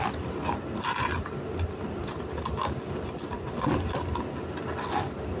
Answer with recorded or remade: recorded